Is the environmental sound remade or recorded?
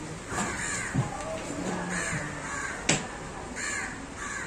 recorded